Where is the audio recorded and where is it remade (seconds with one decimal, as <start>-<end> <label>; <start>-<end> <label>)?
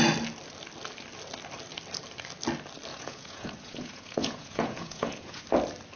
0.0-2.9 recorded; 2.9-5.4 remade; 5.4-6.0 recorded